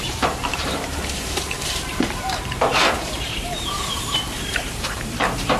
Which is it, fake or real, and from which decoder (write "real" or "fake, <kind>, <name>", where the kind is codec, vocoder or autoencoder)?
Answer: fake, vocoder, BigVGAN v2